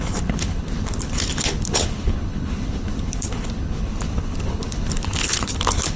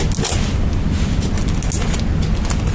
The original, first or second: second